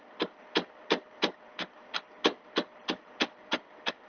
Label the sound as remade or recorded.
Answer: recorded